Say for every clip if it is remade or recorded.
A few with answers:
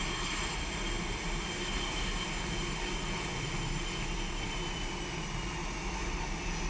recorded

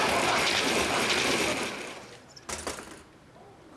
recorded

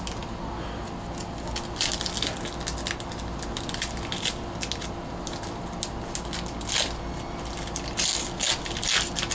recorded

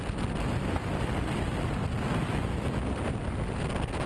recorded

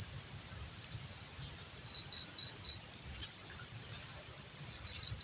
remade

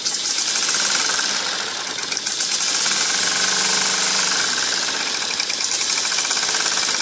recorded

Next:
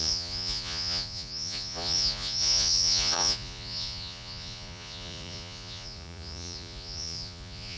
remade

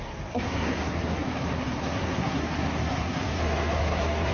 remade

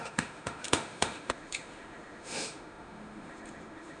remade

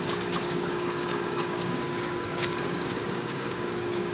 remade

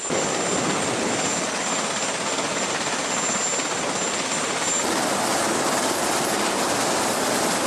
recorded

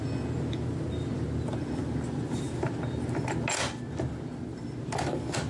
recorded